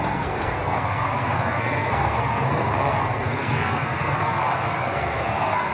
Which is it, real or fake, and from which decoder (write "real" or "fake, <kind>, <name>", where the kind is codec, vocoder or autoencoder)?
fake, codec, SNAC